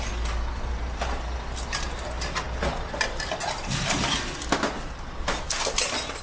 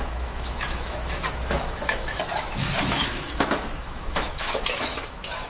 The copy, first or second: second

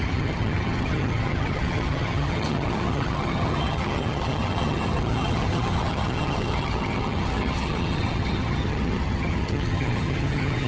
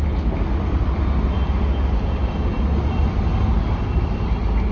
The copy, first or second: first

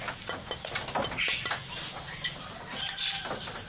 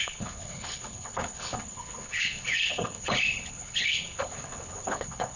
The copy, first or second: second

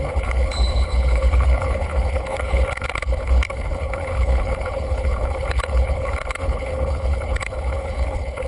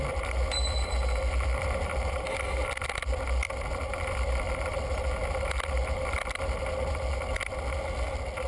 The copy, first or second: first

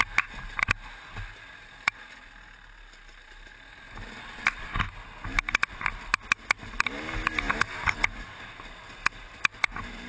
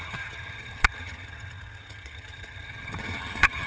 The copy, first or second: second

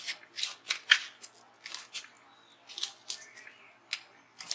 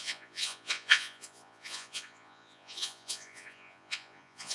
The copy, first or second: second